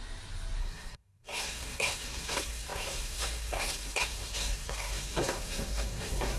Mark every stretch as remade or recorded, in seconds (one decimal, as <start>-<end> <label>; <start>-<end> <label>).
0.0-0.6 recorded; 0.6-6.4 remade